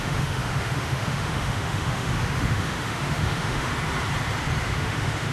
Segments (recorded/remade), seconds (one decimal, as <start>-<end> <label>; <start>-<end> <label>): 0.0-3.7 remade; 3.7-4.6 recorded; 4.6-5.3 remade